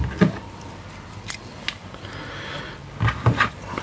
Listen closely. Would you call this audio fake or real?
real